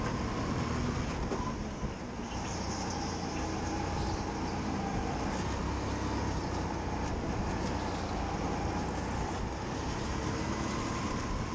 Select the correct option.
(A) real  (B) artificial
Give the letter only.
A